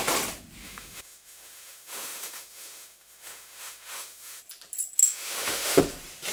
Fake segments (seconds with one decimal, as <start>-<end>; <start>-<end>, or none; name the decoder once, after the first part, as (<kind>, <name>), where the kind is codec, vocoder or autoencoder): 0.6-4.4 (autoencoder, DAC-VAE); 5.0-5.8